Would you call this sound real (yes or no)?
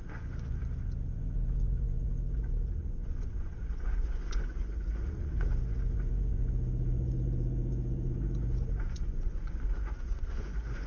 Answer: no